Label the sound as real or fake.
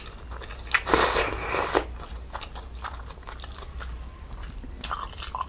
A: real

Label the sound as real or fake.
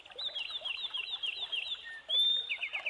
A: real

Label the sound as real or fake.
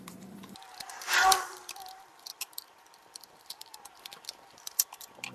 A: fake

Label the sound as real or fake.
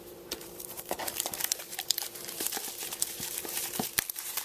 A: fake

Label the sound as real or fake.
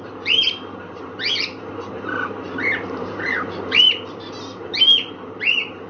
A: fake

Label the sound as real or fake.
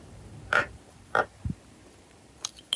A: fake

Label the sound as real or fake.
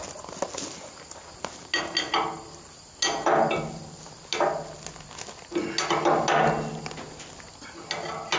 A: real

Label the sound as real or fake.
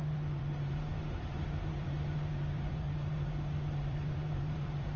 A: fake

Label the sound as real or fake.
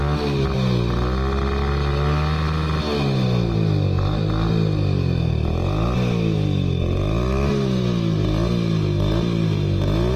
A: real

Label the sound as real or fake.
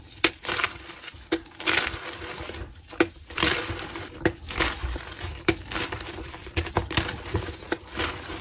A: fake